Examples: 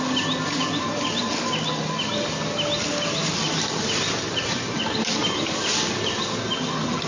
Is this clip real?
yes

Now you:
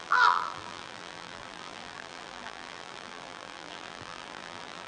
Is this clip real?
no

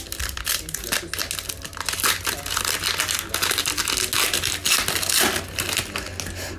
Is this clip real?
yes